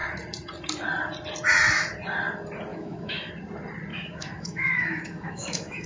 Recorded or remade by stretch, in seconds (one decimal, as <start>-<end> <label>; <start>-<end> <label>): 0.0-2.7 recorded; 2.7-3.3 remade; 3.3-3.9 recorded; 3.9-5.9 remade